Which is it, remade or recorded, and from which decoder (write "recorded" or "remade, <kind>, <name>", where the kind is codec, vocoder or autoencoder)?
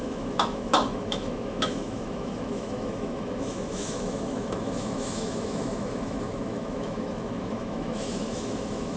remade, autoencoder, DAC-VAE